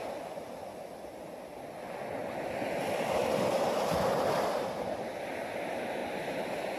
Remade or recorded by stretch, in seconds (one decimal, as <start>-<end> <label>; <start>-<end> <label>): 0.0-6.0 recorded; 6.0-6.8 remade